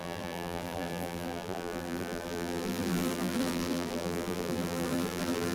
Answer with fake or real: fake